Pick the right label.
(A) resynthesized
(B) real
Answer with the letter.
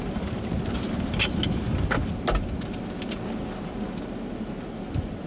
B